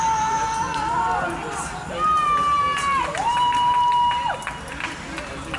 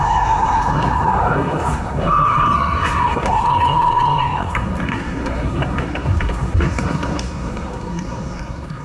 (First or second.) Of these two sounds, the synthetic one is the second